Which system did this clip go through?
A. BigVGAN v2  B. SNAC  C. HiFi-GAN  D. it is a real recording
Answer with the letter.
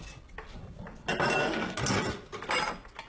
D